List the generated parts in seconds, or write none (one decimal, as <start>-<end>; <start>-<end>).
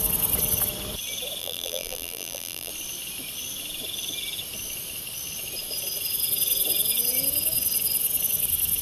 1.4-2.7